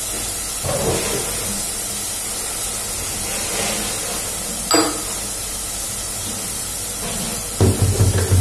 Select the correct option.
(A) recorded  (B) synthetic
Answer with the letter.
A